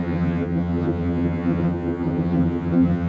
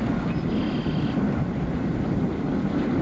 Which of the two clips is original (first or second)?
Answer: second